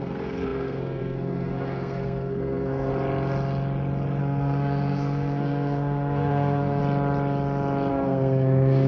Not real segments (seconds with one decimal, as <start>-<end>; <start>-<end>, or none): 0.0-2.9; 4.2-6.8; 7.9-8.9